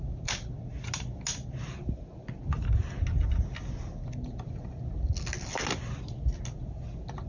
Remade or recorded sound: recorded